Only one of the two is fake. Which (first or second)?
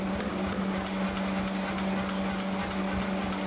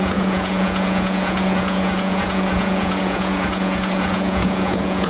second